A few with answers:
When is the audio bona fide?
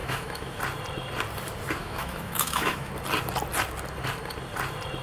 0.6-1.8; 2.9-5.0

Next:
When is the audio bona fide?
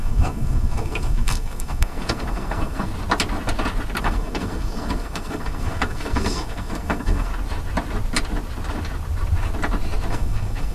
2.9-4.0; 7.3-10.1